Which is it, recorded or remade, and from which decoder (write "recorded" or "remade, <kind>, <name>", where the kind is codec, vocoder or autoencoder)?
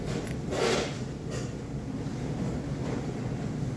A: recorded